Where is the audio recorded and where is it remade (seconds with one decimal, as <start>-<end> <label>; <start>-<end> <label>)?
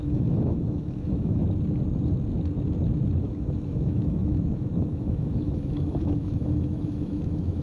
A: 0.0-1.4 remade; 1.4-3.2 recorded; 3.2-7.6 remade